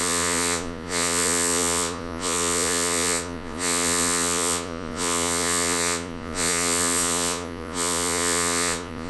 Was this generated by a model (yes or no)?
yes